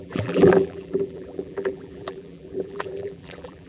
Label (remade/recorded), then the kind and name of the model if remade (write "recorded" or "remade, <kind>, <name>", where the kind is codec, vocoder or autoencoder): remade, vocoder, BigVGAN v2